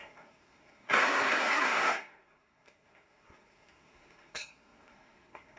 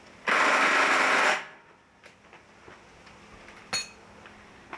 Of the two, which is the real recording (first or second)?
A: second